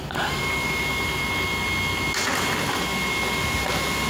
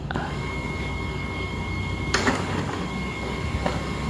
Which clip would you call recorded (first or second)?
first